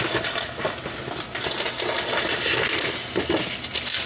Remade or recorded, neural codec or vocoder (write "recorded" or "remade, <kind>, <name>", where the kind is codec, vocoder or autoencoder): recorded